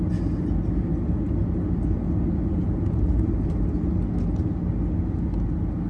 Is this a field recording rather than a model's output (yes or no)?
yes